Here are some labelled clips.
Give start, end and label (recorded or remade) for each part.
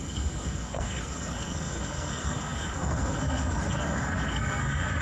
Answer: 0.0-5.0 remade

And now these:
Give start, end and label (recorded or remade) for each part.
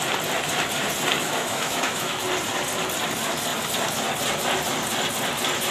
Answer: 0.0-1.2 recorded; 1.2-2.2 remade; 2.2-5.7 recorded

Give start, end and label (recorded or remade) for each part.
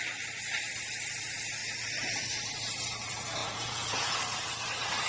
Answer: 0.0-3.4 recorded; 3.4-4.2 remade; 4.2-5.1 recorded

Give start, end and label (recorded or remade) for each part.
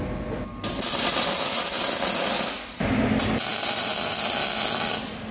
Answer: 0.0-5.3 recorded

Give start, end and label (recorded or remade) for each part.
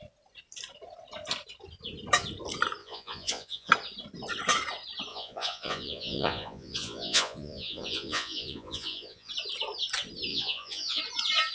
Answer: 0.0-2.8 recorded; 2.8-3.7 remade; 3.7-5.1 recorded; 5.1-9.3 remade; 9.3-10.3 recorded; 10.3-11.0 remade; 11.0-11.5 recorded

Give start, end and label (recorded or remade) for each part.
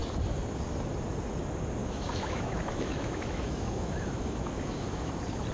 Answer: 0.0-1.8 recorded; 1.8-5.1 remade; 5.1-5.5 recorded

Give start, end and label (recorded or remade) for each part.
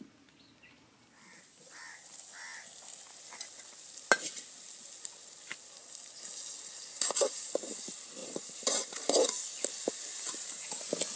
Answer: 0.0-6.9 recorded; 6.9-7.5 remade; 7.5-8.2 recorded; 8.2-9.3 remade; 9.3-10.1 recorded; 10.1-10.7 remade; 10.7-11.2 recorded